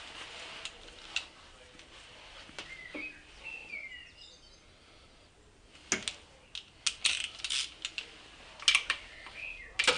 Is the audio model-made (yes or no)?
no